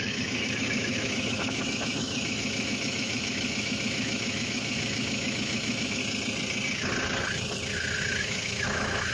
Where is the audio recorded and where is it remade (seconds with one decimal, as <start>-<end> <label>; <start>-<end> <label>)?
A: 0.0-6.0 remade; 6.0-8.2 recorded; 8.2-9.1 remade